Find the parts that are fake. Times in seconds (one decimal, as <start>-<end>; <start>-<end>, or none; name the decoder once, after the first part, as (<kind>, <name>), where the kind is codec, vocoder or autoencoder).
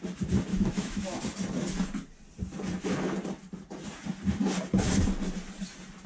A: 0.5-1.2 (autoencoder, DAC-VAE)